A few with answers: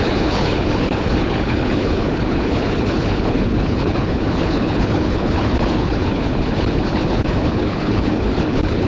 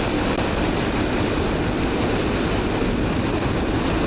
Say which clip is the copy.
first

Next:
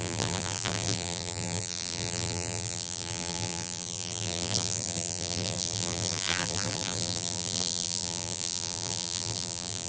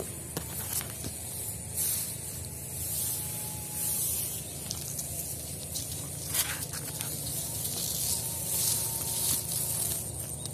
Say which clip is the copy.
first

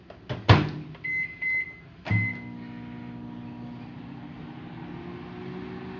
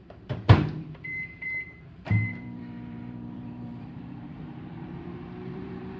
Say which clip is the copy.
second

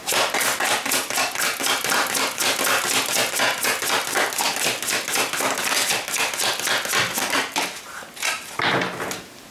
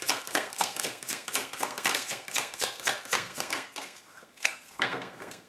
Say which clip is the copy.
second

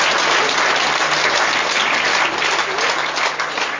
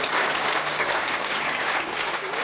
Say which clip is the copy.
second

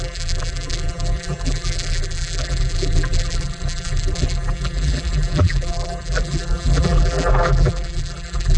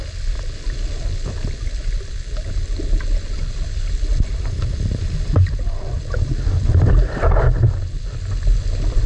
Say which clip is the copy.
first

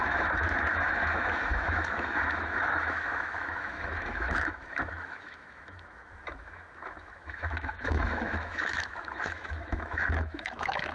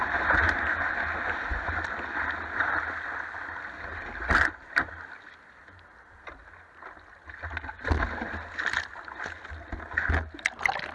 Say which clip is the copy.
first